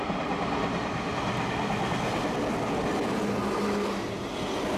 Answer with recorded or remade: recorded